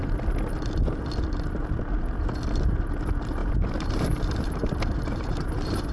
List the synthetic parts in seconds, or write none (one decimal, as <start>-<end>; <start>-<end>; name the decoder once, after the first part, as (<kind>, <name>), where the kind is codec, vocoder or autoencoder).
3.4-5.9 (vocoder, BigVGAN v2)